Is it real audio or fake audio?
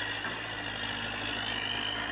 real